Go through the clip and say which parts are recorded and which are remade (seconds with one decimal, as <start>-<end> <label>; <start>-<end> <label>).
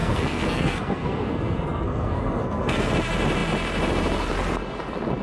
0.0-2.9 remade; 2.9-5.2 recorded